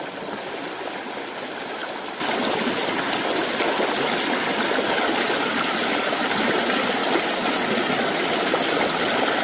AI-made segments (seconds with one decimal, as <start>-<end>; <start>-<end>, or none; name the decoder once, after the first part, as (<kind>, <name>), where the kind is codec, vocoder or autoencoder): none